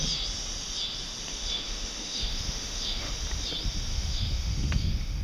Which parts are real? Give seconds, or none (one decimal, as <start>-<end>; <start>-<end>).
0.0-1.3; 3.1-3.9